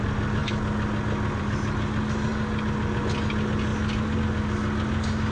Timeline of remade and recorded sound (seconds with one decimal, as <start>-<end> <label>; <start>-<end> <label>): 0.0-5.3 recorded